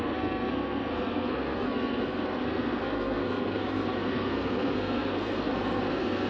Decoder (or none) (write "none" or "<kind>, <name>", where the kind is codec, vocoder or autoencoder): codec, SNAC